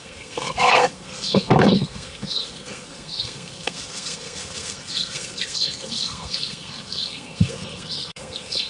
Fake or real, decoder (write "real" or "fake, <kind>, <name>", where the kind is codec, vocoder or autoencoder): fake, codec, SNAC